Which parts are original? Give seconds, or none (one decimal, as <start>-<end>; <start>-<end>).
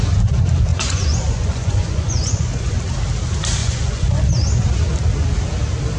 0.0-0.7; 2.8-3.6; 4.2-6.0